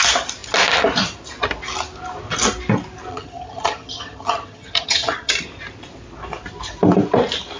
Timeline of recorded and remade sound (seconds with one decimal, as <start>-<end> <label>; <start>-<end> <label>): 0.0-3.1 recorded; 3.1-5.3 remade; 5.3-7.6 recorded